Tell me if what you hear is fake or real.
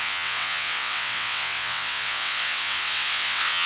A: fake